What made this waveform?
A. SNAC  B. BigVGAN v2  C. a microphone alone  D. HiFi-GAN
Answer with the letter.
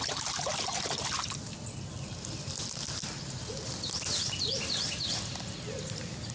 C